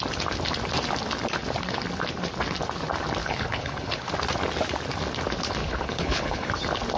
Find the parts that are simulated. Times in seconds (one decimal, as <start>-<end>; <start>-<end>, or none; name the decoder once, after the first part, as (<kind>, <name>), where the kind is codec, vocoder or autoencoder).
3.2-4.1 (codec, HILCodec); 5.6-6.5

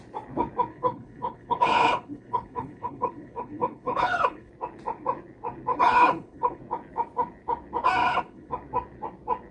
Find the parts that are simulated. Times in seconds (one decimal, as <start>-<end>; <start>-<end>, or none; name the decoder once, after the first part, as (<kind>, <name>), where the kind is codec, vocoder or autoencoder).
0.7-4.5 (codec, HILCodec); 5.7-6.6; 8.0-8.5

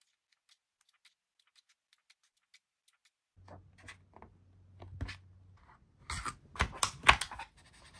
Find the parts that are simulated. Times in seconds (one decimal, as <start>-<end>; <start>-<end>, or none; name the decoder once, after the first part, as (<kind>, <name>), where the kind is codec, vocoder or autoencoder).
none

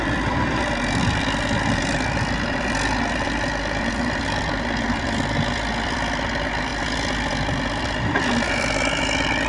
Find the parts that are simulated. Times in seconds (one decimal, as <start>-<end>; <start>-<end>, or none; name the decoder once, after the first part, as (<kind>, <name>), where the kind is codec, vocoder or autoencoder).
none